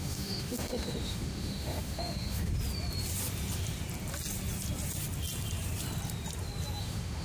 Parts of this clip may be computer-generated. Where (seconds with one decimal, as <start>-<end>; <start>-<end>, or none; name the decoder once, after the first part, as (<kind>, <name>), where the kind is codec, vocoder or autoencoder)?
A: 0.0-2.5 (autoencoder, DAC-VAE); 6.8-7.2